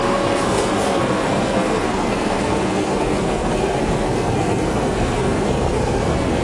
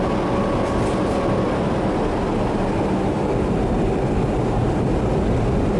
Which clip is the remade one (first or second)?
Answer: first